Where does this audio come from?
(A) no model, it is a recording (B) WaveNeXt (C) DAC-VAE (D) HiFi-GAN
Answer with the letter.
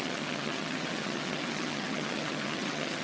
D